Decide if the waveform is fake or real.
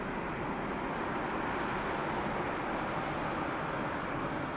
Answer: real